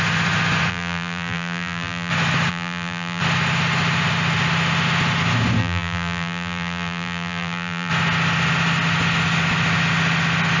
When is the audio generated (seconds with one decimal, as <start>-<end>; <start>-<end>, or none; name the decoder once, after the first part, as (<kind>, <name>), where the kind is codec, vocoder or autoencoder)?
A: 0.7-2.1 (vocoder, BigVGAN v2); 2.5-3.2; 5.6-7.9